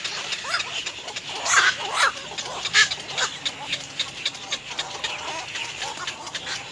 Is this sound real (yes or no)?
yes